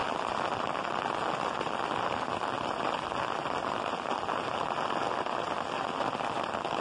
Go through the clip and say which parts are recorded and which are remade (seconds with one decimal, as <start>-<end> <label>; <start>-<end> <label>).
0.0-6.8 recorded